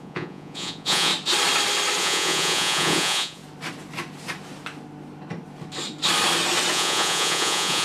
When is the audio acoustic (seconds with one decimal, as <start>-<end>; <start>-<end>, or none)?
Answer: 1.1-2.0; 3.4-6.7